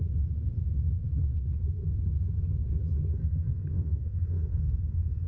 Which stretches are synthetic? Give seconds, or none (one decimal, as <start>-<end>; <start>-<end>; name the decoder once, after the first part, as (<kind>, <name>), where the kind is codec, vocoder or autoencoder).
3.1-5.3 (codec, SNAC)